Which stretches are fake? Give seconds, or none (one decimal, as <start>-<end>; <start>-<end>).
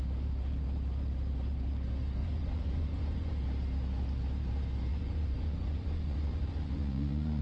2.2-3.3; 4.9-7.4